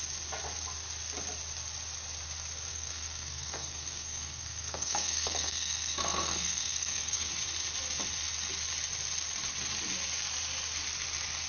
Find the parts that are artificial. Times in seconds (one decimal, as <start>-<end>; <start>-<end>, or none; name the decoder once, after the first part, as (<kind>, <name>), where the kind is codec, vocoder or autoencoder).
2.7-7.3 (codec, SNAC)